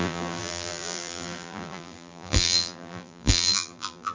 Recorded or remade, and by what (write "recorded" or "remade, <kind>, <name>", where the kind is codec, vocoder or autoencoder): remade, vocoder, BigVGAN v2